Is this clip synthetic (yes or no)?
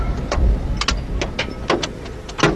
no